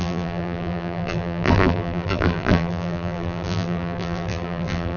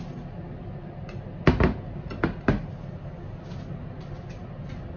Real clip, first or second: second